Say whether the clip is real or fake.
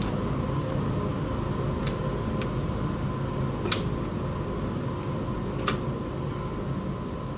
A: real